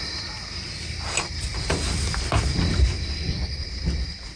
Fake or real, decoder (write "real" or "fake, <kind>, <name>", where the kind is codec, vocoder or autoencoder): real